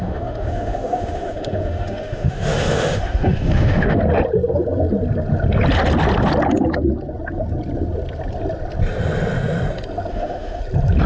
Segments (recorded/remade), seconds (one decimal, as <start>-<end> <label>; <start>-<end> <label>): 0.0-4.0 remade; 4.0-10.1 recorded; 10.1-10.6 remade; 10.6-11.1 recorded